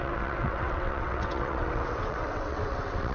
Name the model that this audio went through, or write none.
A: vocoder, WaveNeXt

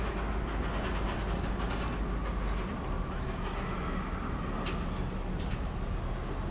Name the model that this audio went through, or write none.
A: none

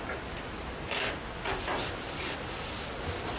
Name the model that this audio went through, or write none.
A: none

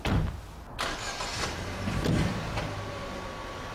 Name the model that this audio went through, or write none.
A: none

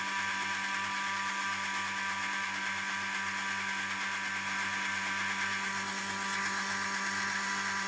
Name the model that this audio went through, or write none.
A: none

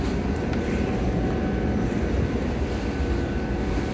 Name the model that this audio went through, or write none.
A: none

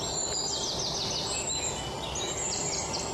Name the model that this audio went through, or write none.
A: none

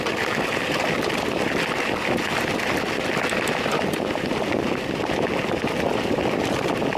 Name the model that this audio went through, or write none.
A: none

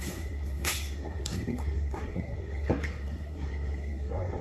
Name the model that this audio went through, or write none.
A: codec, SNAC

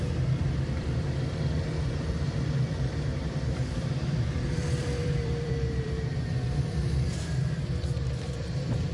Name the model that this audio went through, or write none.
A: vocoder, BigVGAN v2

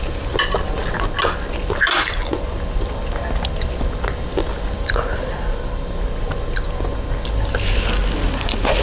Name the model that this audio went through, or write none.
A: none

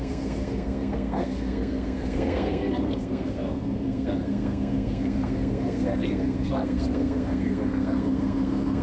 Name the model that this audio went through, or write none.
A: codec, SNAC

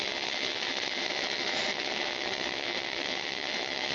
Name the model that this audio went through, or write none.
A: vocoder, WaveNeXt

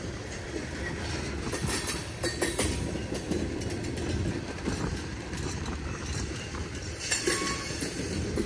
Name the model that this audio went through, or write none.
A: vocoder, BigVGAN v2